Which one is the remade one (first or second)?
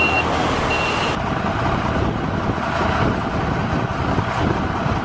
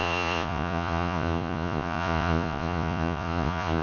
second